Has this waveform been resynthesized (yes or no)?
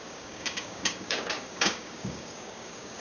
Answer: yes